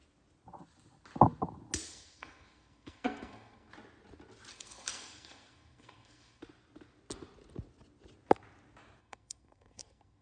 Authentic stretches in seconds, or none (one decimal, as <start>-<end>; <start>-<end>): 0.0-1.9; 3.7-4.5; 6.4-9.0